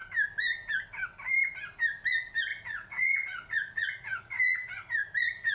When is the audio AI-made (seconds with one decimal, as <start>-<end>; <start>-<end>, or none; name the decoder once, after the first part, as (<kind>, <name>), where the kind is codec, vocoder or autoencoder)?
2.5-4.9 (vocoder, Vocos)